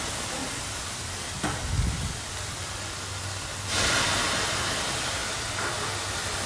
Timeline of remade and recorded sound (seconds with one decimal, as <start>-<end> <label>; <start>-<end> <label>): 0.0-6.5 recorded